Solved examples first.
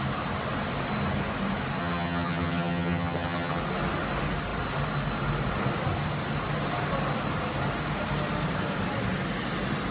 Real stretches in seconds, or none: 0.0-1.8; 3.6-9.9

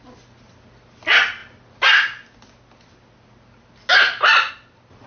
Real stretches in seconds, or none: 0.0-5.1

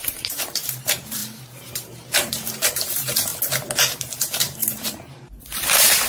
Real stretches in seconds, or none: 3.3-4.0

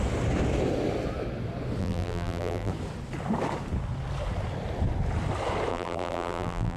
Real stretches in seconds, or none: 0.0-1.8; 2.7-5.7